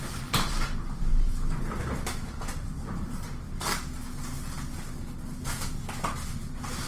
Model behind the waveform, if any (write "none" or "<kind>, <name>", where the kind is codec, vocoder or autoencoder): none